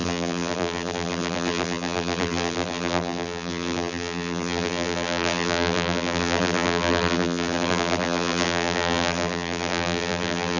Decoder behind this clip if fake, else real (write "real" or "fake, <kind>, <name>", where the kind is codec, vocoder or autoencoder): fake, vocoder, BigVGAN v2